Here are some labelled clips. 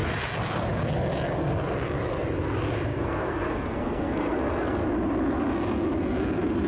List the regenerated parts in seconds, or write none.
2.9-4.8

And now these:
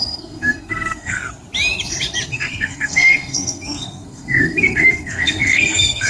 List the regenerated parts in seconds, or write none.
0.0-1.2; 2.3-6.1

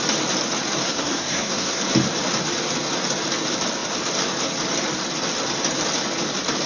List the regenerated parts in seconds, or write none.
0.8-1.8

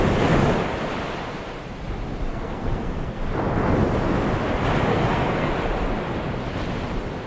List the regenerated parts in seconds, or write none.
2.3-3.2; 4.9-5.5

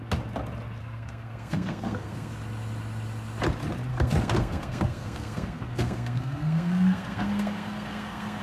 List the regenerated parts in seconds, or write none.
0.8-2.3; 3.9-8.4

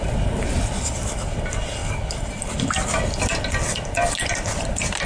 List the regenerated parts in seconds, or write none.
none

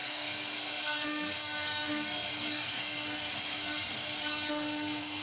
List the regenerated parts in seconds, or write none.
0.0-5.2